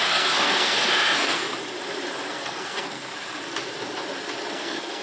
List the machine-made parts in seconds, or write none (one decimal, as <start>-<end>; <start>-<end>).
0.0-1.4; 2.3-3.1; 4.5-5.0